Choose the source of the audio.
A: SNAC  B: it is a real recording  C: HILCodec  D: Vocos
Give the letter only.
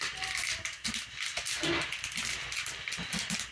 B